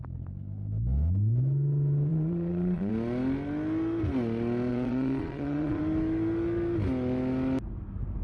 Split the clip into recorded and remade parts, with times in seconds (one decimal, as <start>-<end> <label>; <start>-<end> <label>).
0.0-2.1 recorded; 2.1-2.9 remade; 2.9-4.7 recorded; 4.7-5.8 remade; 5.8-8.2 recorded